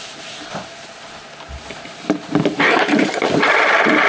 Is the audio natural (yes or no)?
no